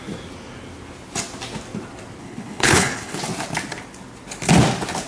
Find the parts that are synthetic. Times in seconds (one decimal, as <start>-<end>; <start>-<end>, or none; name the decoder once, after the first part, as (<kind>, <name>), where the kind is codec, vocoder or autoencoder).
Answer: 2.2-3.2 (codec, HILCodec)